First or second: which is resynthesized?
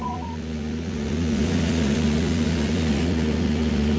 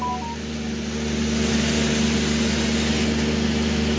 first